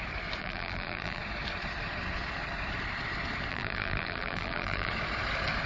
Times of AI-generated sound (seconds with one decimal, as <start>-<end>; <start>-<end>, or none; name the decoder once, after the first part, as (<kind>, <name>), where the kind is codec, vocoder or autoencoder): 0.4-1.2 (vocoder, BigVGAN v2); 3.5-4.9